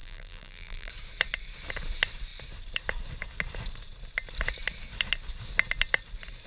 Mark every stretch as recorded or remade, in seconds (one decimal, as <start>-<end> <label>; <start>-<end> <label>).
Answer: 0.0-0.9 remade; 0.9-6.5 recorded

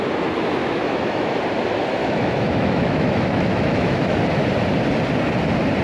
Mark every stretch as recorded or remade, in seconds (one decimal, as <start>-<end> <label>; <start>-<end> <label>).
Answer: 0.0-0.6 recorded; 0.6-1.4 remade; 1.4-2.0 recorded; 2.0-4.2 remade; 4.2-5.8 recorded